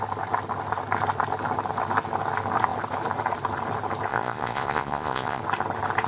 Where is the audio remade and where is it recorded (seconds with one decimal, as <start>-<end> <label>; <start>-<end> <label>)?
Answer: 0.0-4.1 recorded; 4.1-5.4 remade; 5.4-6.1 recorded